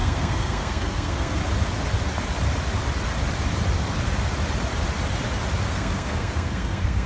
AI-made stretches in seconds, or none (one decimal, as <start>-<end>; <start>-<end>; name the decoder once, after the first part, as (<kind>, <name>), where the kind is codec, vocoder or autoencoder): 0.0-1.4 (codec, SNAC); 5.7-7.1